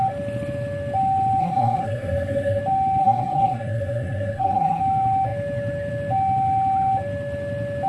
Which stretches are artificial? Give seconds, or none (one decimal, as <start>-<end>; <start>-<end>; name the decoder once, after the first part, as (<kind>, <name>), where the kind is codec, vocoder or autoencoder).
1.4-2.6 (codec, SNAC); 3.0-4.8